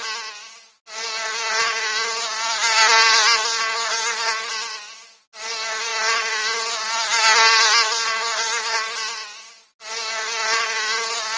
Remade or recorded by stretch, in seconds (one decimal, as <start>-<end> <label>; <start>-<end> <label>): 0.0-11.4 recorded